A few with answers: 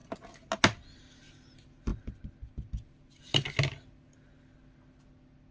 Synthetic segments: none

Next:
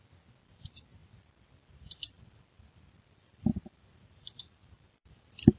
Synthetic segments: none

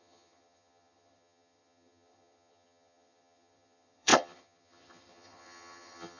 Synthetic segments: 0.0-6.2 (vocoder, HiFi-GAN)

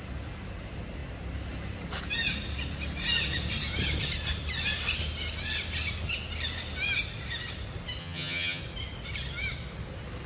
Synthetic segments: 8.0-8.6 (vocoder, HiFi-GAN)

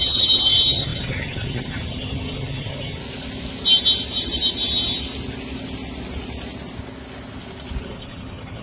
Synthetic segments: 0.0-3.0 (vocoder, HiFi-GAN); 7.8-8.6

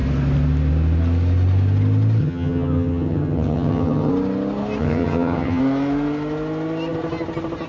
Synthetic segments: 2.2-4.1 (vocoder, HiFi-GAN); 4.8-5.6

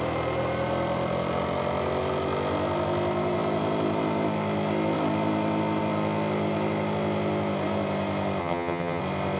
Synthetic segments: 8.4-9.0 (vocoder, HiFi-GAN)

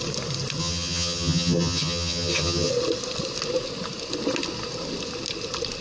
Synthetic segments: 0.6-2.7 (vocoder, HiFi-GAN)